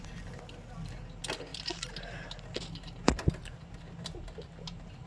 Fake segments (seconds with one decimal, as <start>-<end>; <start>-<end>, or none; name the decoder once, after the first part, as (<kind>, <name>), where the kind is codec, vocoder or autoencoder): 1.5-3.9 (vocoder, BigVGAN v2)